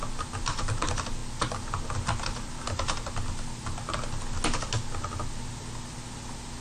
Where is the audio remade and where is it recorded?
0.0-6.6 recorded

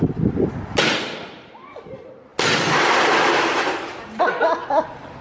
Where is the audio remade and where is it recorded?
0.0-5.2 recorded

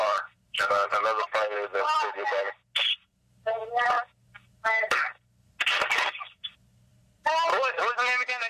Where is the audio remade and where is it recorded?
0.0-0.6 remade; 0.6-8.5 recorded

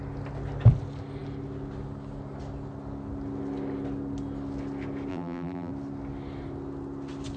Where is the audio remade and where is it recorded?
0.0-5.1 recorded; 5.1-5.7 remade; 5.7-7.4 recorded